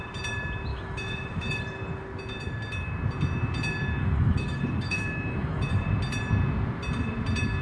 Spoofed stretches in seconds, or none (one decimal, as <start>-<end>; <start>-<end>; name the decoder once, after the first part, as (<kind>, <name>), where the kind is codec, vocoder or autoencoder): 0.7-1.6 (autoencoder, DAC-VAE); 4.0-5.7